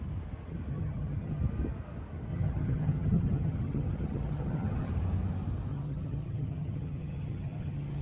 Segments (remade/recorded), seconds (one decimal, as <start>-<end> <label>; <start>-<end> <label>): 0.0-0.7 recorded; 0.7-1.4 remade; 1.4-2.3 recorded; 2.3-4.9 remade; 4.9-5.7 recorded; 5.7-8.0 remade